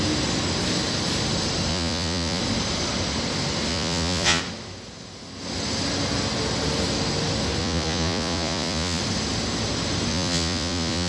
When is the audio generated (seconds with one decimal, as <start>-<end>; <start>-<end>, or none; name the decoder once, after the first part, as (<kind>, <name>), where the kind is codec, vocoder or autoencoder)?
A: 1.7-2.4 (vocoder, Vocos); 3.7-4.4; 7.6-9.0; 10.1-11.1